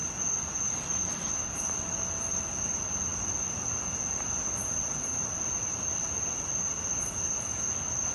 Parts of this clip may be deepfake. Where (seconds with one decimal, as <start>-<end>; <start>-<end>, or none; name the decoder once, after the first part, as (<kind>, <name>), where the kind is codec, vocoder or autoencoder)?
none